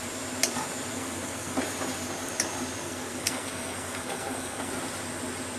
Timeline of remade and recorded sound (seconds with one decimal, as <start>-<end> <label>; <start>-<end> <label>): 0.0-0.9 recorded; 0.9-1.6 remade; 1.6-2.8 recorded; 2.8-4.7 remade; 4.7-5.6 recorded